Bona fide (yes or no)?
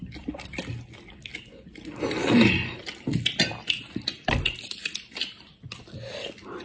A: yes